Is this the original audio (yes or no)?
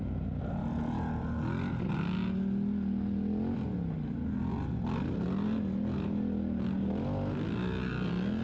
yes